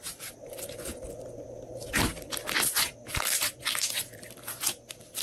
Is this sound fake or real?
real